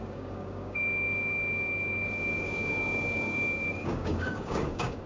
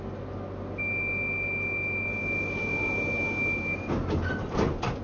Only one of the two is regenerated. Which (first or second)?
first